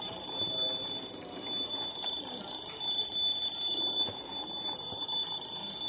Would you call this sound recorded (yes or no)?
yes